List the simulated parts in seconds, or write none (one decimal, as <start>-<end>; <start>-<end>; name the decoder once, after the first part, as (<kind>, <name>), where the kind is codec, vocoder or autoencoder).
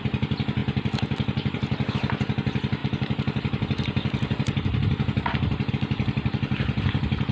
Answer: 0.6-1.9 (vocoder, BigVGAN v2); 2.8-5.7